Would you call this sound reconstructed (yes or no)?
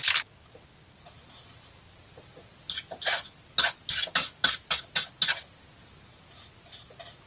no